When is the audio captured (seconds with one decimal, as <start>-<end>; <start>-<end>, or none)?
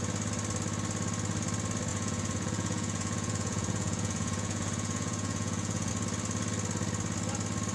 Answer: 0.0-1.9; 5.9-7.7